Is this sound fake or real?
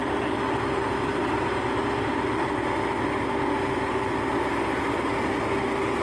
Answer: real